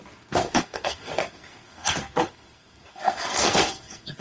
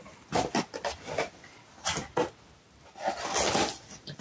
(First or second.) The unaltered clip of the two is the second